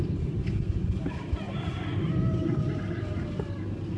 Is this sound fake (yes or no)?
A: no